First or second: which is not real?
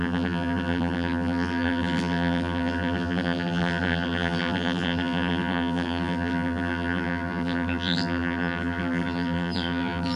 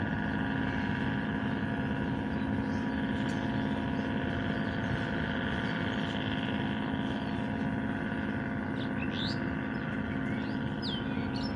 first